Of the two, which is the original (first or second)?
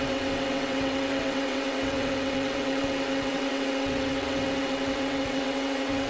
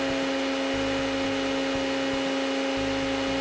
second